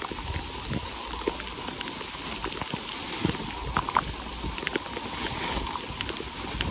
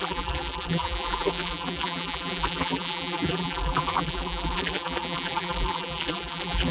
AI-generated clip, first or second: second